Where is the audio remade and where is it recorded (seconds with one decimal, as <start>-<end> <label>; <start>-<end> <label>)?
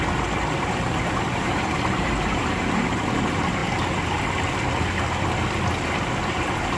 0.0-1.3 recorded; 1.3-2.9 remade; 2.9-6.8 recorded